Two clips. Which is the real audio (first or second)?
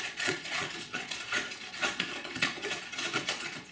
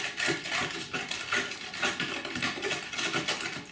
second